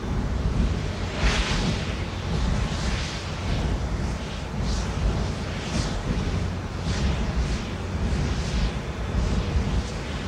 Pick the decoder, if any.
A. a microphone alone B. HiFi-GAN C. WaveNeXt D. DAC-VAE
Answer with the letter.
A